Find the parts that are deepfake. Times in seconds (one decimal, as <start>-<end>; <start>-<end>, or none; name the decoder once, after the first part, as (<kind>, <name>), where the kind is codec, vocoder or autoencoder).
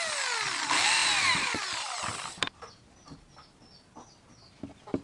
none